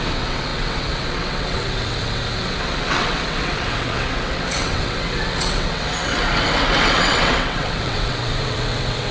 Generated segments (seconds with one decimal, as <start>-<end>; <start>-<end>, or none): 0.0-9.1